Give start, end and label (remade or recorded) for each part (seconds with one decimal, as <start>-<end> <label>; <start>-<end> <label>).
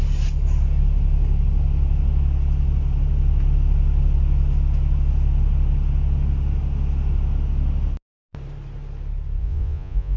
0.0-9.4 recorded; 9.4-10.2 remade